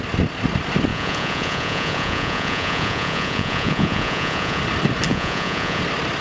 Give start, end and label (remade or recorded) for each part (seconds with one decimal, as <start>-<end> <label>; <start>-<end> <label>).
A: 0.0-0.9 recorded; 0.9-4.6 remade; 4.6-5.1 recorded; 5.1-5.8 remade; 5.8-6.2 recorded